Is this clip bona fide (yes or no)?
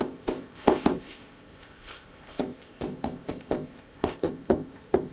no